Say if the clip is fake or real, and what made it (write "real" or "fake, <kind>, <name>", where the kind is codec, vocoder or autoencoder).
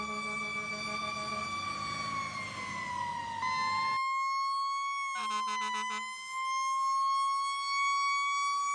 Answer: real